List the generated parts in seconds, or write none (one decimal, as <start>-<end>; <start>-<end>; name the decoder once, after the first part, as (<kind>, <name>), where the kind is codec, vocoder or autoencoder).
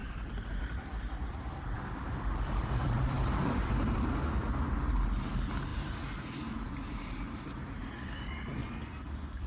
0.0-4.1 (vocoder, BigVGAN v2)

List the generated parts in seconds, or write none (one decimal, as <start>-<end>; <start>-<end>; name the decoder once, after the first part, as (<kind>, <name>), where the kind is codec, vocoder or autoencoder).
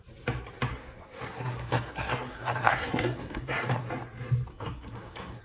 0.7-3.9 (codec, SNAC); 4.5-5.4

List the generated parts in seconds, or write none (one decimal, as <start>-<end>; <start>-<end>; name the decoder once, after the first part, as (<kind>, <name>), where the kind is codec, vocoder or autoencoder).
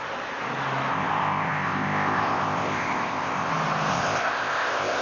0.9-3.5 (codec, ZipCodec); 3.9-5.0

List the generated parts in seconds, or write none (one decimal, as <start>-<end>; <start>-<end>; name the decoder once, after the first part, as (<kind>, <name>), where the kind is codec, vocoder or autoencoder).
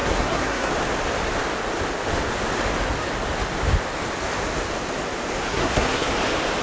0.0-0.7 (codec, SNAC); 5.5-6.1